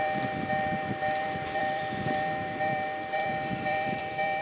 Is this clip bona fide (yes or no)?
no